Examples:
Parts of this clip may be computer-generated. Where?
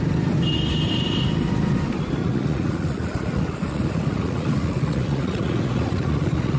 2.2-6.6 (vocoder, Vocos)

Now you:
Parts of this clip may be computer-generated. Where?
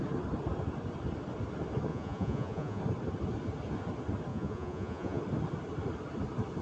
1.9-2.8 (vocoder, Vocos); 4.3-5.2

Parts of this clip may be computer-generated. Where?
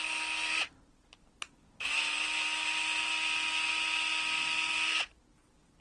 none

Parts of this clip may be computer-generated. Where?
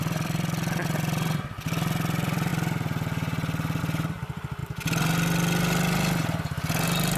0.0-2.5 (vocoder, BigVGAN v2); 3.8-4.6